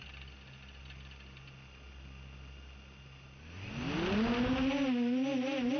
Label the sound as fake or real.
real